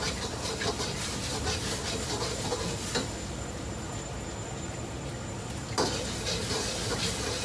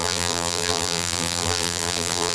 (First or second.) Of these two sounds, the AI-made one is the second